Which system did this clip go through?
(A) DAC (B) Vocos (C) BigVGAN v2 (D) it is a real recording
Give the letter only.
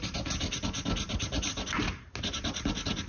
D